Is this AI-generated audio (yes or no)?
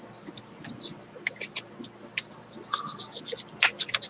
no